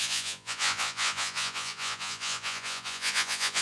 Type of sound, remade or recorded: remade